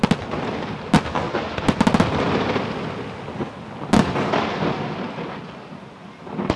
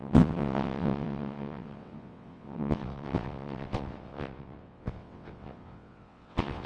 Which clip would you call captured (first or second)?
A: first